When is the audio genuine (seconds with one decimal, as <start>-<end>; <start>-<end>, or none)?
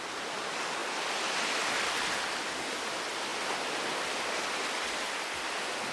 0.0-5.9